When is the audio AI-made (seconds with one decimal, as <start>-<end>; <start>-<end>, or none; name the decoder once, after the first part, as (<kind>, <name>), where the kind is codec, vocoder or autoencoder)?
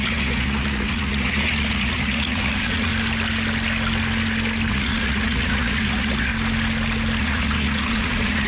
0.0-2.9 (vocoder, Vocos); 4.7-6.3; 7.2-8.5